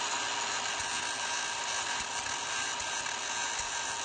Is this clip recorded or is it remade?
recorded